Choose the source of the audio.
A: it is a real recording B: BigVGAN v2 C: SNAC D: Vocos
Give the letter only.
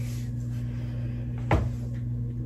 A